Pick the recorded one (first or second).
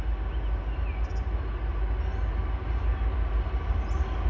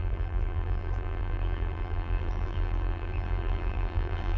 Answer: first